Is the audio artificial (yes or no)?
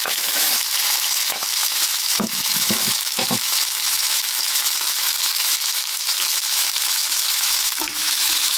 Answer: yes